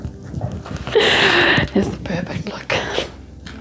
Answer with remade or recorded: recorded